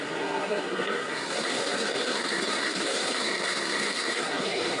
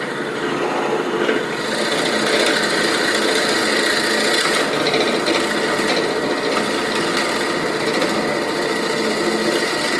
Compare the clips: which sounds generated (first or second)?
first